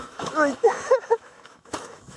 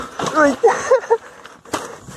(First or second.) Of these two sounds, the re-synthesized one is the first